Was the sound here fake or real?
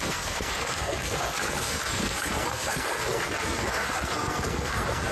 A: fake